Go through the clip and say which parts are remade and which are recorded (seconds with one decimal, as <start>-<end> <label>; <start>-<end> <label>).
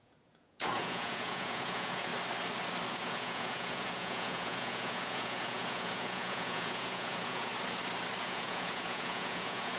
0.0-2.1 remade; 2.1-2.9 recorded; 2.9-7.5 remade; 7.5-8.2 recorded; 8.2-9.8 remade